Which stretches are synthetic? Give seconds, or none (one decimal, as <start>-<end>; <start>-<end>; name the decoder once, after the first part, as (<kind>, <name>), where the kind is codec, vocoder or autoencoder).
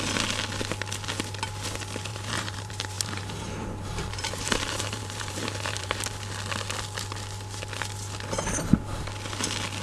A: 2.1-6.0 (vocoder, BigVGAN v2)